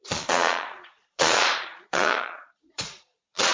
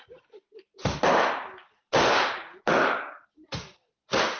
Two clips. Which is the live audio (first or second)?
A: second